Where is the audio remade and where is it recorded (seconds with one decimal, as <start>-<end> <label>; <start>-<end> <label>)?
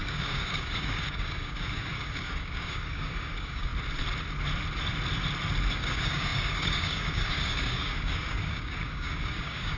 0.0-3.7 remade; 3.7-5.7 recorded; 5.7-9.8 remade